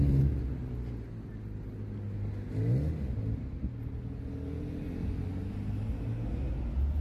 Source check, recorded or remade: recorded